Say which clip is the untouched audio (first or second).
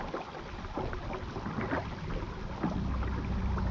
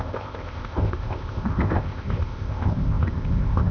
first